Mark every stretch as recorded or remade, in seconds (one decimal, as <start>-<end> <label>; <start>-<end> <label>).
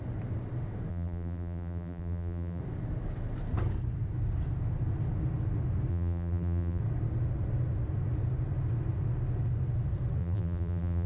0.0-0.9 recorded; 0.9-2.6 remade; 2.6-5.9 recorded; 5.9-6.8 remade; 6.8-10.2 recorded; 10.2-11.1 remade